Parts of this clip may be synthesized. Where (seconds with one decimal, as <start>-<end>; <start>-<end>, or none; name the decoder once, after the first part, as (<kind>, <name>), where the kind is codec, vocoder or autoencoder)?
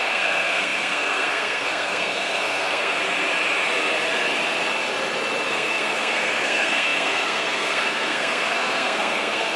0.0-3.0 (codec, SNAC); 5.5-9.6